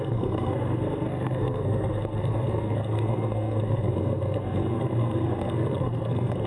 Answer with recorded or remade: remade